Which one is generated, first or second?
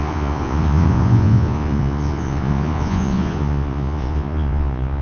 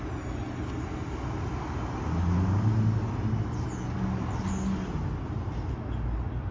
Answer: first